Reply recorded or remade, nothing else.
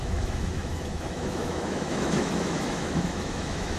remade